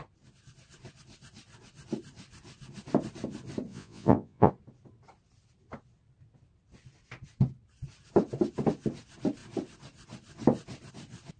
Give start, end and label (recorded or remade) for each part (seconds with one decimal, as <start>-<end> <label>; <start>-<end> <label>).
0.0-3.7 recorded; 3.7-4.5 remade; 4.5-11.4 recorded